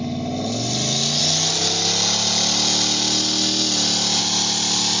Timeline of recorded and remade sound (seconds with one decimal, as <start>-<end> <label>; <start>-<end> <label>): 0.0-5.0 recorded